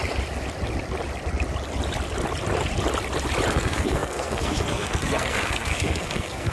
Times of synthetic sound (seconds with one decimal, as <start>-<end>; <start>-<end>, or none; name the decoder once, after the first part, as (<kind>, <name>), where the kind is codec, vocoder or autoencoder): 3.5-6.5 (codec, SNAC)